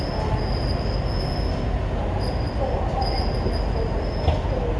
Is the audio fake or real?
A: real